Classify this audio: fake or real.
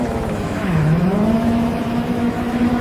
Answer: fake